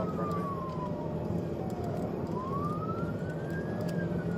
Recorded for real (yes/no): no